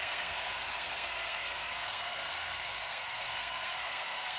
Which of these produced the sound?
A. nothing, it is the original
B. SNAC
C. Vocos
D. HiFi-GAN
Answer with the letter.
B